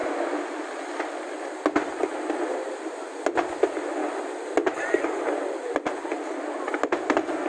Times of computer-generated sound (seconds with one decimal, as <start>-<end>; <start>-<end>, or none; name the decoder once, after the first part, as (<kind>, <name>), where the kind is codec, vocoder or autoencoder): none